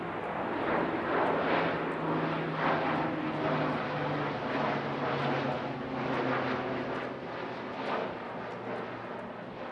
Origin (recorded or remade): recorded